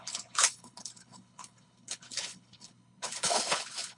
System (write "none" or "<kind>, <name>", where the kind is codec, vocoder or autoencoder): codec, HILCodec